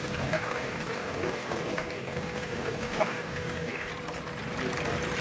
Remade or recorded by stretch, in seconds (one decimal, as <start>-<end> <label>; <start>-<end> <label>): 0.0-3.9 remade; 3.9-5.2 recorded